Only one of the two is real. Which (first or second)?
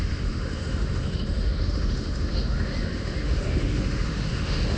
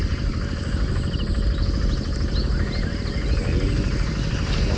second